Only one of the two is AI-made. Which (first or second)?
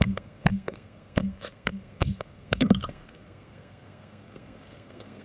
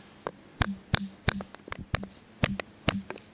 first